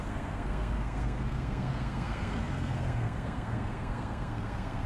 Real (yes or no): no